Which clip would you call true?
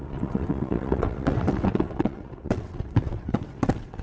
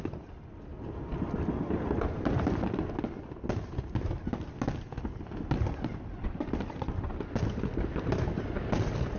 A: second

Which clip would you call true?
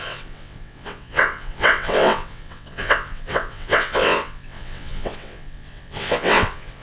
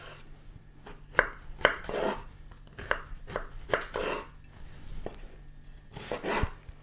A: second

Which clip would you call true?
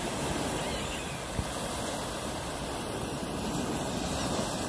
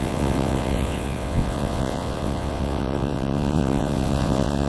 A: first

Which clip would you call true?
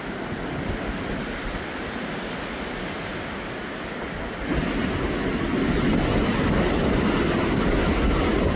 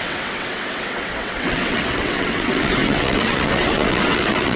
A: first